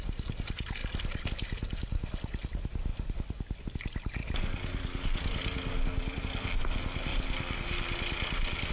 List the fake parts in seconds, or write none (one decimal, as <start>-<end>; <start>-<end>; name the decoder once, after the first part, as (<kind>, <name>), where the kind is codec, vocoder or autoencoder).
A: 2.9-3.6 (vocoder, BigVGAN v2); 4.2-6.2; 7.1-8.7